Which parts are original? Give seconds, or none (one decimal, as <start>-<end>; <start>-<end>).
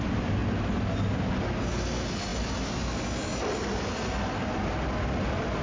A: 0.0-5.6